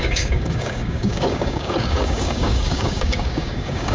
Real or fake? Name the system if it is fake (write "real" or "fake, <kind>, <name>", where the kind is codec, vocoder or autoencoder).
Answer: fake, codec, DAC